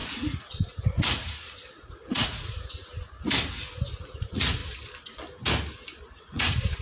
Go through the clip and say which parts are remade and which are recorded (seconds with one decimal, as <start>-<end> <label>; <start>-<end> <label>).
0.0-2.9 remade; 2.9-4.0 recorded; 4.0-4.6 remade; 4.6-6.2 recorded; 6.2-6.8 remade